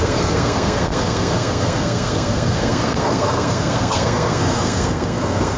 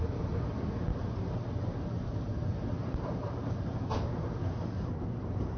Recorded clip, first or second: second